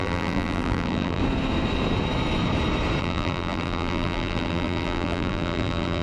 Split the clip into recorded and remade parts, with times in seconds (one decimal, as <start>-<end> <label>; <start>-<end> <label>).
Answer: 0.0-1.2 remade; 1.2-3.0 recorded; 3.0-6.0 remade

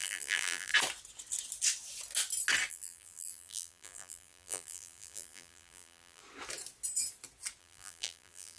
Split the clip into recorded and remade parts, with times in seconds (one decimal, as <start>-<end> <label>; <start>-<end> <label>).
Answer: 0.0-0.7 remade; 0.7-2.7 recorded; 2.7-6.2 remade; 6.2-7.6 recorded; 7.6-8.6 remade